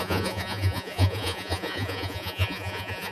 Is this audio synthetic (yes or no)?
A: yes